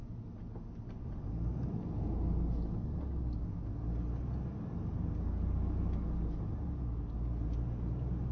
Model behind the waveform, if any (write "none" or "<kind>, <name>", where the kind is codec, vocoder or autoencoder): none